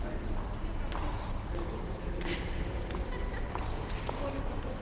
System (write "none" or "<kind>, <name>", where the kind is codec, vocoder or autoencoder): none